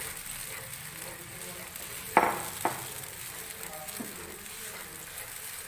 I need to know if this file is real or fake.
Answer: real